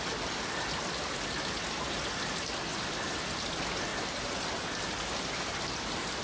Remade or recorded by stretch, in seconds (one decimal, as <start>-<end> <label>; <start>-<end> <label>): 0.0-6.2 recorded